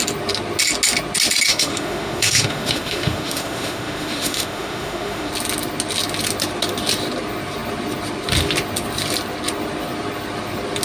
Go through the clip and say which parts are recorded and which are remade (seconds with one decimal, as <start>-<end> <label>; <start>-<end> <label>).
0.0-1.5 recorded; 1.5-5.3 remade; 5.3-10.8 recorded